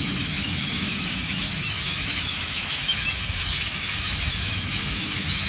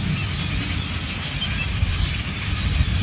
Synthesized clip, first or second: first